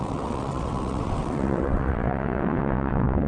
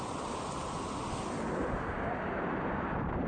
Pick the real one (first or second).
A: second